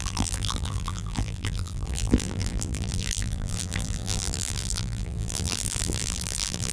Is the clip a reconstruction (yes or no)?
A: yes